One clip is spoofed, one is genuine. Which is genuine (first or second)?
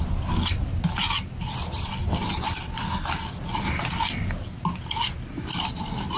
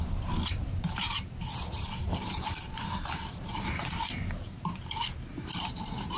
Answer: first